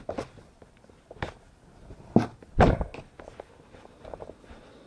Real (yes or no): yes